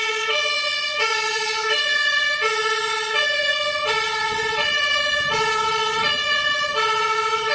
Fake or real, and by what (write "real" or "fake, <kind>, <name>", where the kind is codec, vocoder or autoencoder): fake, vocoder, Vocos